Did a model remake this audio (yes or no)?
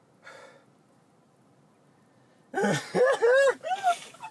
no